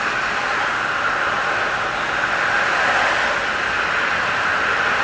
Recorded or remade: recorded